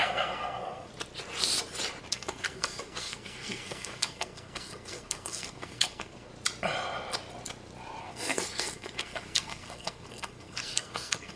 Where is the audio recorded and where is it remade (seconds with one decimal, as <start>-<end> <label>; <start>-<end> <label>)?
0.0-0.9 remade; 0.9-2.1 recorded; 2.1-6.3 remade; 6.3-8.0 recorded; 8.0-11.4 remade